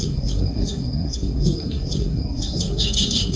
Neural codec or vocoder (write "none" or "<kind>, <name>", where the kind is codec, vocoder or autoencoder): codec, SNAC